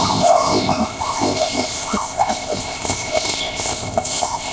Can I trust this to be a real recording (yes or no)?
no